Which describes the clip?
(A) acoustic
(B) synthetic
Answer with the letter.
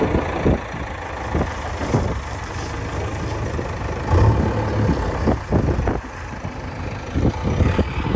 A